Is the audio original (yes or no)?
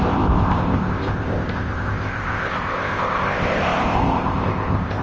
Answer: no